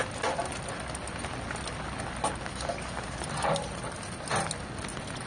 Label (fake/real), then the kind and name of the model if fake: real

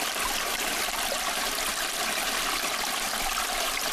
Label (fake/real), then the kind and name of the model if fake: real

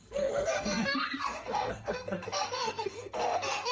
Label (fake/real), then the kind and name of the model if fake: fake, codec, SNAC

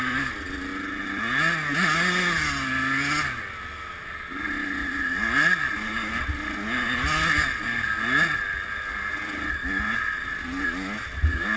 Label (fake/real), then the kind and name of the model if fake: real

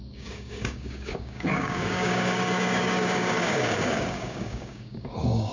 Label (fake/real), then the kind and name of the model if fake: fake, codec, DAC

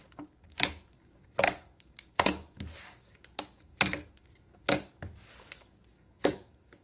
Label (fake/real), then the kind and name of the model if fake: fake, codec, DAC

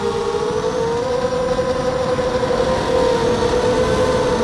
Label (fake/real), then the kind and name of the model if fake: real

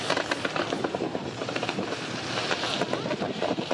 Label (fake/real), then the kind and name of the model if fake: fake, vocoder, BigVGAN v2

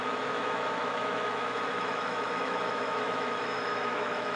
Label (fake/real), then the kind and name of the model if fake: fake, autoencoder, DAC-VAE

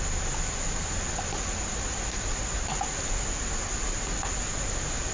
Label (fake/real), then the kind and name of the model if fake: real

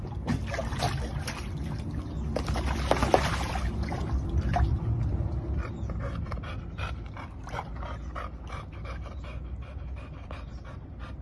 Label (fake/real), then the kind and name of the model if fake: real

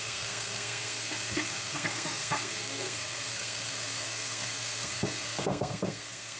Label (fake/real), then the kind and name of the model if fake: fake, codec, SNAC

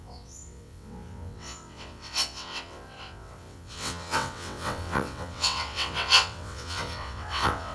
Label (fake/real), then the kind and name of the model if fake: fake, vocoder, WaveNeXt